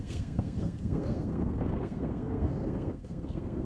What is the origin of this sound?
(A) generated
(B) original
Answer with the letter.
A